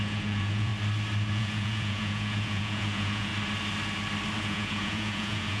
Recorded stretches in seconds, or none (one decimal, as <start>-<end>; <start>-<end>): 0.7-1.3; 3.3-4.4